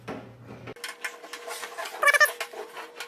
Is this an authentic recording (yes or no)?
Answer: yes